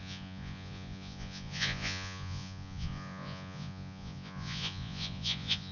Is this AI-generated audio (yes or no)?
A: yes